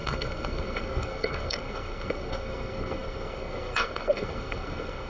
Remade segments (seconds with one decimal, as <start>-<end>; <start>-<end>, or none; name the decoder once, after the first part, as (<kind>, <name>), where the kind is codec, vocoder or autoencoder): 0.0-5.1 (codec, SNAC)